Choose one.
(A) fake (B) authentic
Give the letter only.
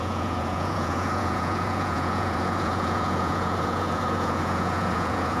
A